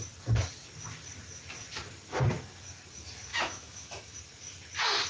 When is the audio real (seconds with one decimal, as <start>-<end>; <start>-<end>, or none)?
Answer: 0.0-3.3; 4.2-5.1